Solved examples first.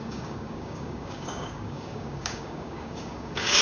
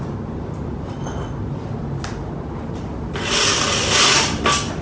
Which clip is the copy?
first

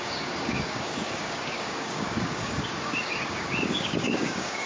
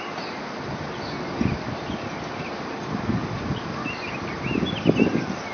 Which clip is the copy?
first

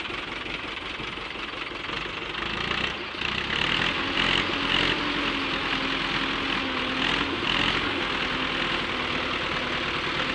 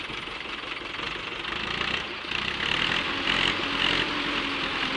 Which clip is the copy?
second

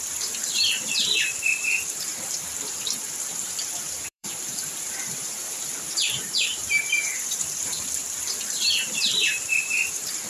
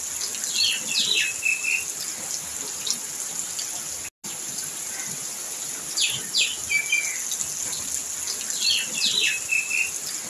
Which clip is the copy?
first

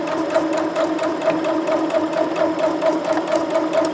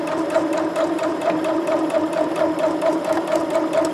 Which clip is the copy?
second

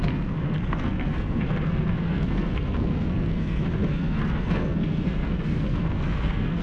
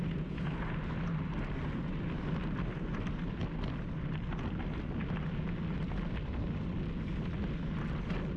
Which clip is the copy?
first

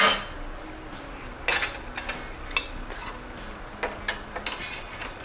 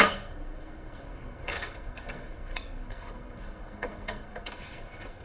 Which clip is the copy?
second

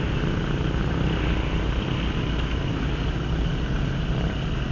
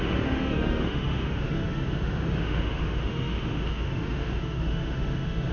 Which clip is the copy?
second